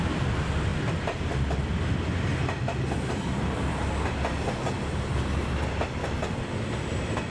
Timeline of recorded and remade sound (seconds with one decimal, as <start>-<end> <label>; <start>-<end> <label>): 0.0-7.3 recorded